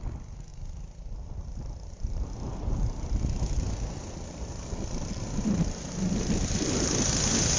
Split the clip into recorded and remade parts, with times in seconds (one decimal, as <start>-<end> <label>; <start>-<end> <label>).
0.0-7.6 recorded